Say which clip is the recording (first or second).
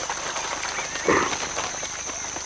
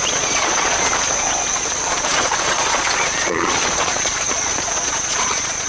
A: first